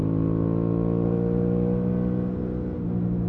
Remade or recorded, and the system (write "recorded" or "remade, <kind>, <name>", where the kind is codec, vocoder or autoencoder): recorded